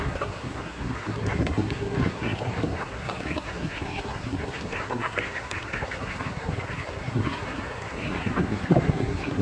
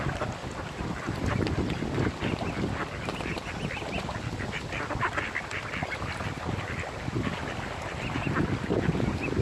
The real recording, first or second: second